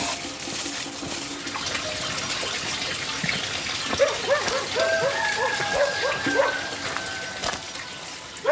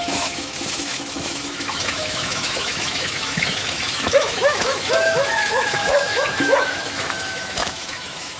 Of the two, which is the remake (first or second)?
second